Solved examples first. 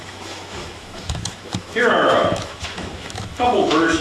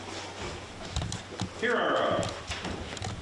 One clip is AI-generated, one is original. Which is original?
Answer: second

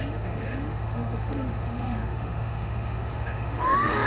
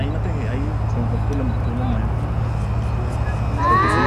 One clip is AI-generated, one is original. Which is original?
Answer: second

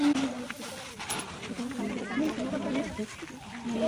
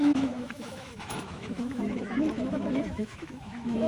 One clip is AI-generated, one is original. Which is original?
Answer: first